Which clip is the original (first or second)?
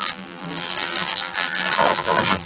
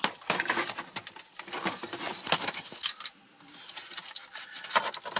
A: second